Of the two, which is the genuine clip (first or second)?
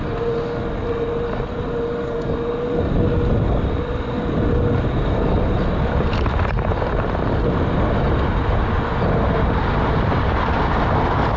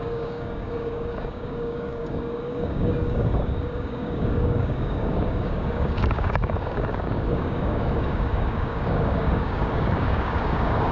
first